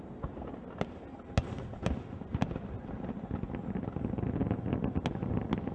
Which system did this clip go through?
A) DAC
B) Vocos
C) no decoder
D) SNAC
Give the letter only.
C